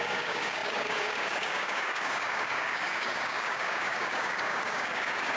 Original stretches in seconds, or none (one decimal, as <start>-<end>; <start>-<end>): none